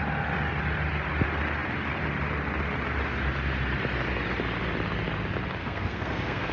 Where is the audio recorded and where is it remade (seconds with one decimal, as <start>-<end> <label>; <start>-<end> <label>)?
0.0-5.6 recorded; 5.6-6.5 remade